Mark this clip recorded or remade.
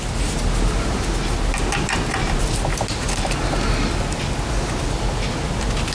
recorded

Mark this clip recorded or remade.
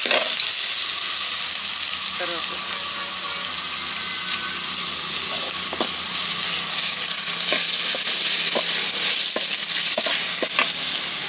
recorded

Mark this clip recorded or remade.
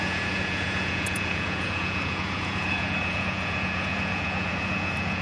remade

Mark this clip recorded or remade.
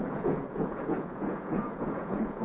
remade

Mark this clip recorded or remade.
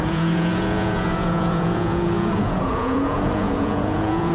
remade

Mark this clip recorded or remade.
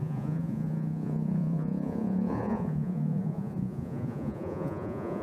remade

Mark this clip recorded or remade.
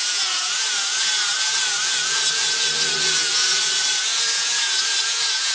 remade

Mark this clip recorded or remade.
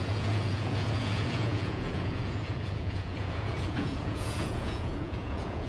remade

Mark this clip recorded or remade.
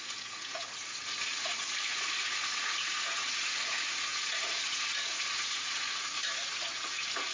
remade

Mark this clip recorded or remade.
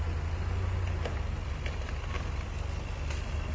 recorded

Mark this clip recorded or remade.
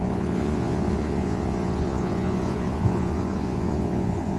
remade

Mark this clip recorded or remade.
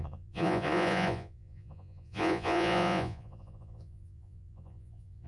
remade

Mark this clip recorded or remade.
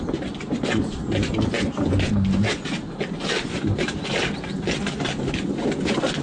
recorded